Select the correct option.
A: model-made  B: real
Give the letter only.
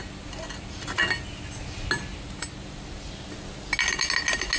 B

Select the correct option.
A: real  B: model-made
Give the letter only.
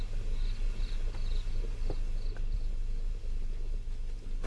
A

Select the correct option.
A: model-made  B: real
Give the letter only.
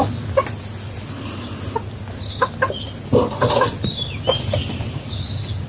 B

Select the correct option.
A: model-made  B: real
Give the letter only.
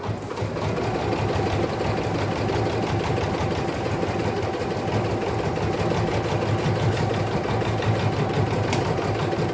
B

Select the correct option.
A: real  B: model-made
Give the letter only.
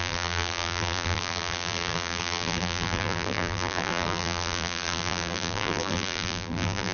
B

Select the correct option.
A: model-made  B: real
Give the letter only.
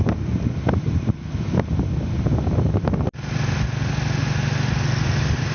B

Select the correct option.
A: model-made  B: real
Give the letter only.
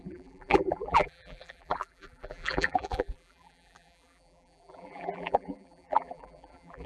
A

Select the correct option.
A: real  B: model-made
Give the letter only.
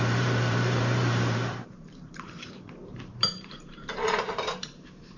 B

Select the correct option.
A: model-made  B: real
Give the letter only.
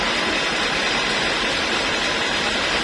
B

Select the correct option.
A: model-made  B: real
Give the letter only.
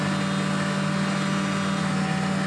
B